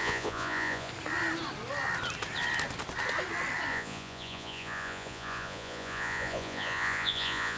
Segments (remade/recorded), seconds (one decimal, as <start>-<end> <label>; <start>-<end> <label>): 0.0-0.9 remade; 0.9-3.7 recorded; 3.7-7.6 remade